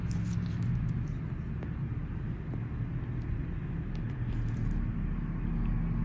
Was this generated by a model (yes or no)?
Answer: no